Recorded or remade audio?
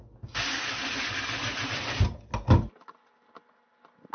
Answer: recorded